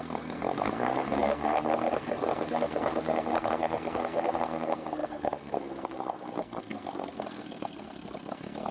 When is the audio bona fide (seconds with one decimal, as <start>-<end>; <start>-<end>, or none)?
none